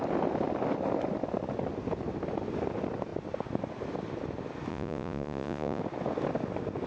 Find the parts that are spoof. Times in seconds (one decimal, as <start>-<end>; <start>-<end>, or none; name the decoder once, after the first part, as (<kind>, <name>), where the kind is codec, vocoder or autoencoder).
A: 4.7-5.8 (vocoder, Vocos)